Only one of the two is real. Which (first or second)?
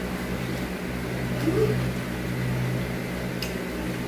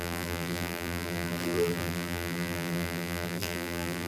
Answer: first